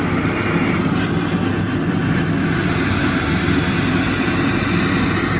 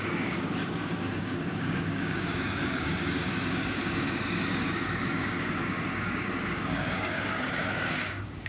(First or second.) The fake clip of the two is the second